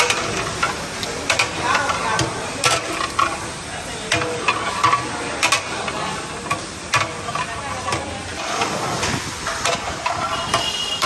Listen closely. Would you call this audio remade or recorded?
recorded